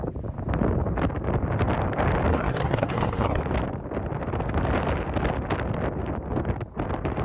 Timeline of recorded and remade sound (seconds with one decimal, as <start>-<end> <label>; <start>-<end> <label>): 0.0-2.3 recorded; 2.3-3.4 remade; 3.4-7.2 recorded